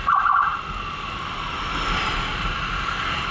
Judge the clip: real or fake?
real